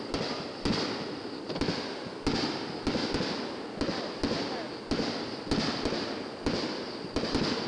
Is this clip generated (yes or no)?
no